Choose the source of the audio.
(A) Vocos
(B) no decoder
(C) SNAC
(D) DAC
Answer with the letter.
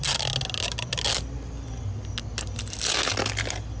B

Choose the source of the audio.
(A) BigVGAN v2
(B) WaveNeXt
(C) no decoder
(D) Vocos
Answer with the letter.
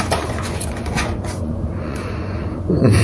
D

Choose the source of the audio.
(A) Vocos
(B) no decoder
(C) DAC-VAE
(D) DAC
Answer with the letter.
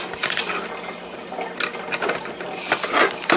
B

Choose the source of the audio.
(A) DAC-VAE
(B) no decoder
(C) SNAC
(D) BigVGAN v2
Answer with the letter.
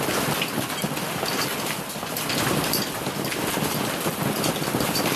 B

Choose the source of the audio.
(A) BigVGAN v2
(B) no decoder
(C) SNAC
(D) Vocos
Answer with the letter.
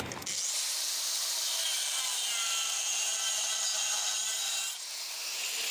B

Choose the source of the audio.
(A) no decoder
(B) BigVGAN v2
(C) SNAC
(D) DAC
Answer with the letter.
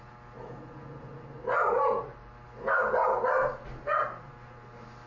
A